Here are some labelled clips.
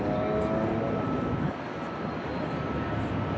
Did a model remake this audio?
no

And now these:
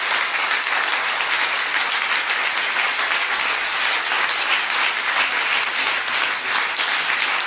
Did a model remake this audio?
no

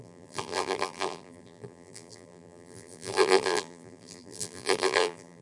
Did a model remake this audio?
yes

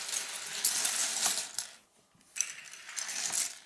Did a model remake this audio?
no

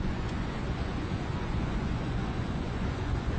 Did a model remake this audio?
yes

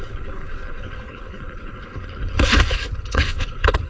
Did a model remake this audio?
yes